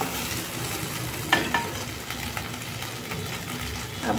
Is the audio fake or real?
real